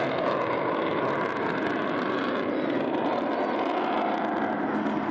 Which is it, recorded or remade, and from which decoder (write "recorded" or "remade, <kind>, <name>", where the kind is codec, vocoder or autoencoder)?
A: remade, vocoder, BigVGAN v2